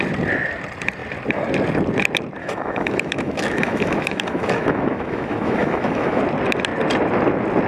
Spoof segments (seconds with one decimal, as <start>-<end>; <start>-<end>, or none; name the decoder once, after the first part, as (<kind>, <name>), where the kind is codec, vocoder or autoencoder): 2.4-6.2 (autoencoder, DAC-VAE)